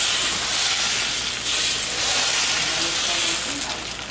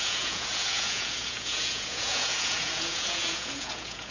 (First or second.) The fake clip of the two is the second